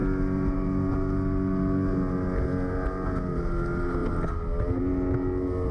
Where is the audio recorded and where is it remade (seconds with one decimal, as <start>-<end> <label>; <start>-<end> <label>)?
0.0-5.7 recorded